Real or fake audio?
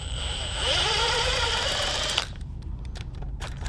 fake